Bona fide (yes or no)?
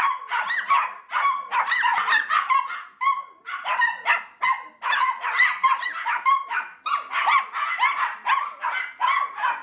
yes